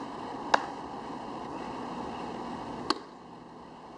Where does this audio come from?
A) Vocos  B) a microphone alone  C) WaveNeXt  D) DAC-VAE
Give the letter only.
B